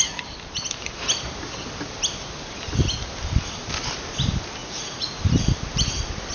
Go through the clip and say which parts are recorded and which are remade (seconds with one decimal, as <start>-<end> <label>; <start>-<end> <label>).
0.0-4.6 recorded; 4.6-5.2 remade; 5.2-6.3 recorded